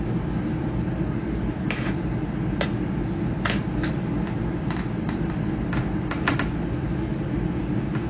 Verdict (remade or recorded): recorded